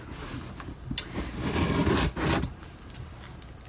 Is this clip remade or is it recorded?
recorded